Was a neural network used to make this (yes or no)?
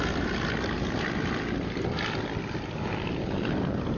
no